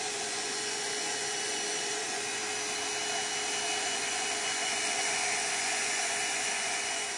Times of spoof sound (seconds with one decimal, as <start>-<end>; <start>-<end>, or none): 0.0-2.4; 3.8-7.2